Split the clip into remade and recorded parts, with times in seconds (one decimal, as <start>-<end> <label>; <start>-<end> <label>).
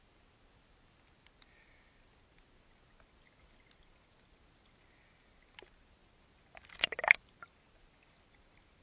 0.0-8.8 recorded